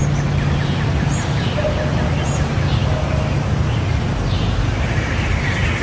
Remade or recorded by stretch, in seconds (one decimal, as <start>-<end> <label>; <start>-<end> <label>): 0.0-5.8 recorded